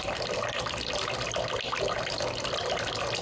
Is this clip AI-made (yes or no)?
no